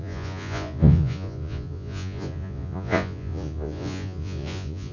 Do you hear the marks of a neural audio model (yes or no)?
yes